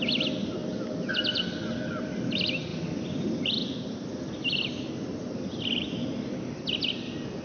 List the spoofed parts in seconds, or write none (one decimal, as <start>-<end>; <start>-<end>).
0.6-2.1